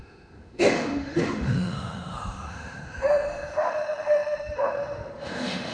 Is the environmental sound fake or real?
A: fake